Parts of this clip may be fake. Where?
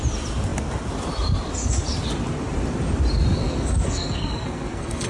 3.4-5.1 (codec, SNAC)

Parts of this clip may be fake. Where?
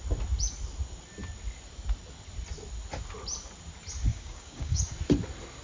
4.1-4.8 (codec, DAC)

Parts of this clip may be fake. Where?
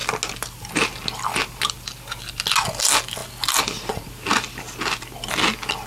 none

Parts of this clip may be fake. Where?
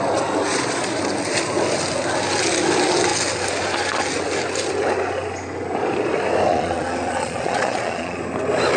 0.5-1.0 (vocoder, Vocos); 6.5-8.2